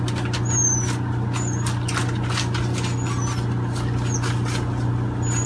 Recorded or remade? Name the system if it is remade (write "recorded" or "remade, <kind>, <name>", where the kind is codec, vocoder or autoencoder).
recorded